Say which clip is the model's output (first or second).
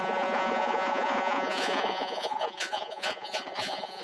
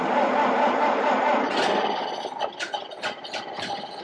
first